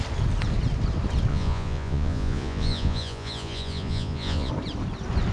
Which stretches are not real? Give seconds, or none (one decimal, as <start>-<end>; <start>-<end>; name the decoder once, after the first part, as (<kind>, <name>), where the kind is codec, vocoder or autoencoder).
1.3-4.5 (vocoder, Vocos)